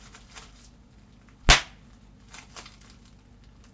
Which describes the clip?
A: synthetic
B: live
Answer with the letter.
B